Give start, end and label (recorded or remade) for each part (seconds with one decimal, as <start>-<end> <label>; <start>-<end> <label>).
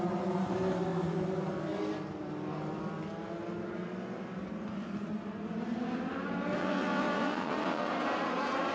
0.0-6.6 recorded; 6.6-7.9 remade; 7.9-8.7 recorded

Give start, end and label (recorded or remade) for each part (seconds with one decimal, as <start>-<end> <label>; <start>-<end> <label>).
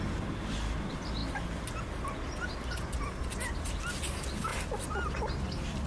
0.0-5.9 recorded